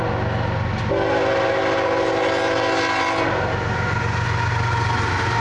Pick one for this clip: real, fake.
real